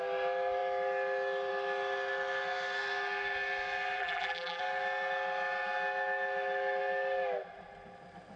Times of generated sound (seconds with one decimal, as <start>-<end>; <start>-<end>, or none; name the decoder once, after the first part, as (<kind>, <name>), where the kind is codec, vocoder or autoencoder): 4.0-4.6 (vocoder, BigVGAN v2)